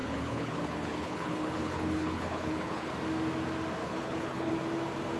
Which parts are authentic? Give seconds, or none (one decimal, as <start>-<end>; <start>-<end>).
2.9-3.8; 4.5-5.2